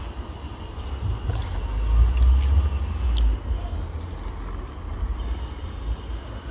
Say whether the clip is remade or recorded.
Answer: recorded